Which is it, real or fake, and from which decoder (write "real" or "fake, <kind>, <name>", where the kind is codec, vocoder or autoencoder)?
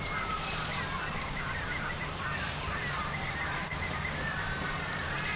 fake, vocoder, BigVGAN v2